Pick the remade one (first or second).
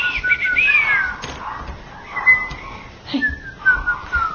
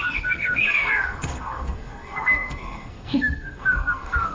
second